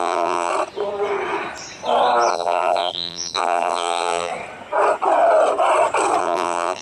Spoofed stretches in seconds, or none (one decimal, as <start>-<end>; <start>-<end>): 0.0-0.5; 2.3-4.3; 6.2-6.8